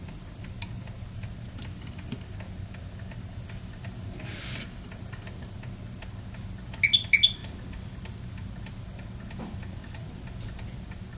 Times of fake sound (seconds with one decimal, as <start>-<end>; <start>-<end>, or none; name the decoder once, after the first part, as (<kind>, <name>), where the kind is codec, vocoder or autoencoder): none